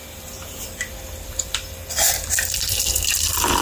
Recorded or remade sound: remade